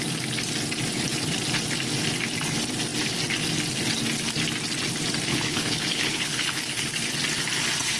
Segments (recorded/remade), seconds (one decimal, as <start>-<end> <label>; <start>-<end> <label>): 0.0-5.3 recorded; 5.3-6.9 remade; 6.9-8.0 recorded